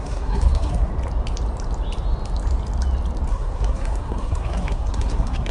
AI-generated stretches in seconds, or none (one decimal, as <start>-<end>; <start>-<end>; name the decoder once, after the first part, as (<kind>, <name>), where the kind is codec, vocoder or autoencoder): 0.0-0.9 (codec, SNAC); 3.3-5.5